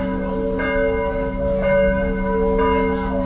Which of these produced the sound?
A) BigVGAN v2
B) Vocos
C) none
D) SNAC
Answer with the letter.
C